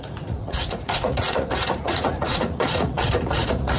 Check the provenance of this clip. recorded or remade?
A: remade